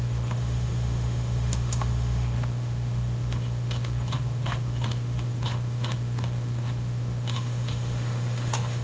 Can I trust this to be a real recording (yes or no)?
no